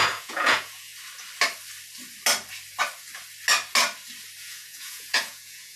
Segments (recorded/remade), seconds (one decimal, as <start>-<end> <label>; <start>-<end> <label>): 0.0-0.9 remade; 0.9-4.4 recorded; 4.4-5.8 remade